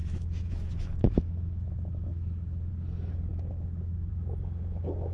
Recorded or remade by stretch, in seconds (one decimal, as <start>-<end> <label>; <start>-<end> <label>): 0.0-2.7 remade; 2.7-3.3 recorded; 3.3-4.1 remade; 4.1-5.1 recorded

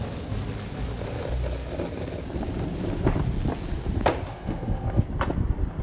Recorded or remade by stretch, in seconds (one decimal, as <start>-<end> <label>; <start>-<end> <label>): 0.0-4.3 recorded; 4.3-5.0 remade; 5.0-5.8 recorded

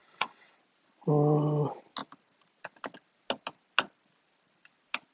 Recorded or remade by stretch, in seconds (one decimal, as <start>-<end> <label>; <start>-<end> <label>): 0.0-0.6 remade; 0.6-5.1 recorded

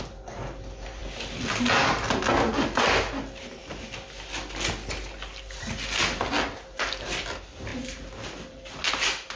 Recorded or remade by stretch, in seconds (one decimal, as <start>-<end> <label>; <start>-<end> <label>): 0.0-9.4 recorded